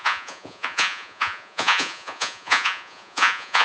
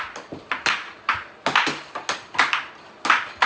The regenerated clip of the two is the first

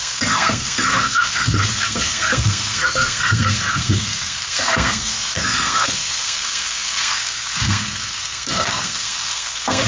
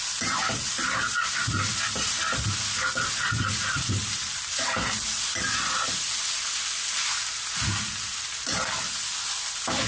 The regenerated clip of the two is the first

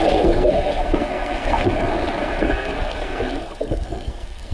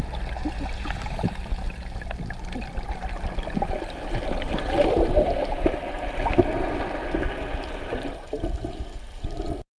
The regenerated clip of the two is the first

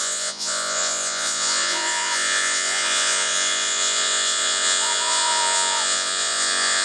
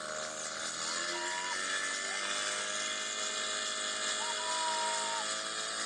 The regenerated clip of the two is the first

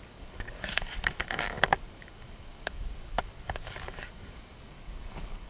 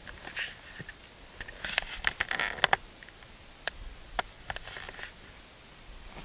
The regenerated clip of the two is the first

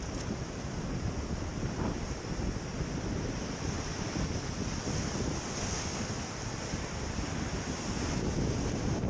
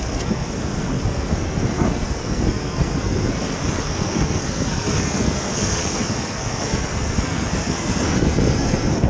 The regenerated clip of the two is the second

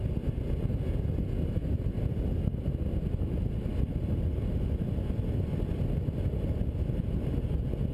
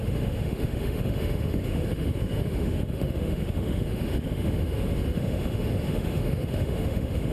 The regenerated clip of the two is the second